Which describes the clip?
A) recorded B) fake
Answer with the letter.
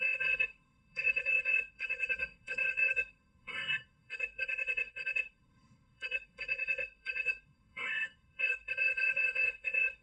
B